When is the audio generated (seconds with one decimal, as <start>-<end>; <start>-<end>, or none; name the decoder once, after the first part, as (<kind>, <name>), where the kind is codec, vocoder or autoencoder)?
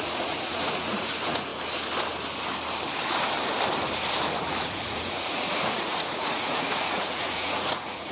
0.0-1.5 (vocoder, Vocos); 4.5-8.1